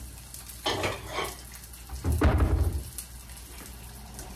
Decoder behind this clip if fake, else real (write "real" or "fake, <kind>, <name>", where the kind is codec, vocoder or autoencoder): real